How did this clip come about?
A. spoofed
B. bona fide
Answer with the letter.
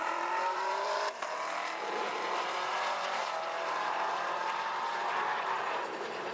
A